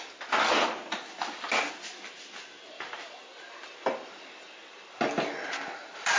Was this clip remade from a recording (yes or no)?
no